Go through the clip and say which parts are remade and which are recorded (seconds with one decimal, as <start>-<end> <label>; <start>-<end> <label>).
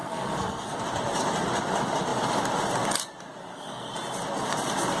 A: 0.0-0.8 remade; 0.8-3.4 recorded; 3.4-3.9 remade; 3.9-5.0 recorded